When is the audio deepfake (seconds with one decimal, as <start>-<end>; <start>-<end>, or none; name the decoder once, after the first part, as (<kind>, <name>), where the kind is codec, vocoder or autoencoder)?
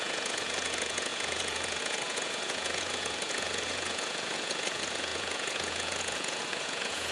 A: 0.0-7.1 (vocoder, Vocos)